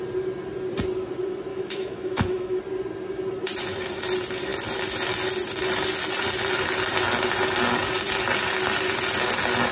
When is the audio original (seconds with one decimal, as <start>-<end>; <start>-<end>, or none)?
0.0-1.5; 2.6-9.7